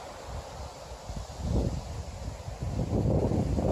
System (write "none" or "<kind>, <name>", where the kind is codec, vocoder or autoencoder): none